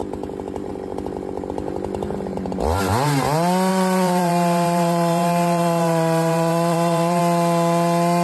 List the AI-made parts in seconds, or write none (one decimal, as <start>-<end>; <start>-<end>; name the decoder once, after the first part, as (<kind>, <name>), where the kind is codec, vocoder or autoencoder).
3.7-7.2 (vocoder, BigVGAN v2)